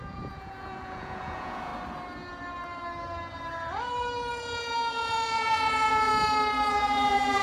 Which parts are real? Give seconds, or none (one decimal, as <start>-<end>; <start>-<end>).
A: 1.7-4.9; 6.1-6.7